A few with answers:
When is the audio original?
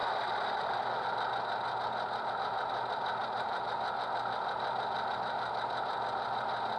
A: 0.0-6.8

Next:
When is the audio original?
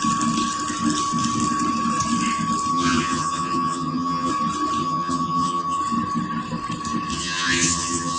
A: 0.0-2.7; 4.3-4.8; 5.8-7.1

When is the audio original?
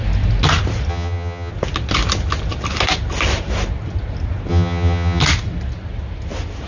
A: 0.0-0.9; 1.5-4.5; 5.2-6.7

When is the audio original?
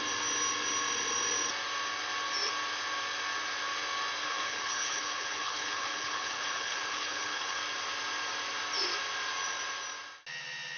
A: 0.0-4.2; 7.6-10.8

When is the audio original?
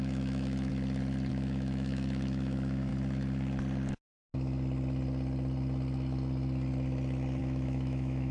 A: 0.7-1.3; 2.9-7.4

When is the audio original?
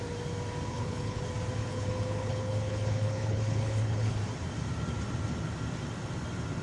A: 0.0-0.7; 1.2-1.6; 4.2-6.6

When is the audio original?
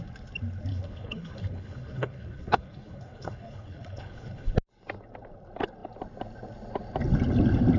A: 0.0-0.7; 4.5-7.8